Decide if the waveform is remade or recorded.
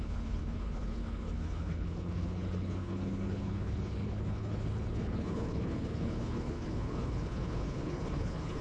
remade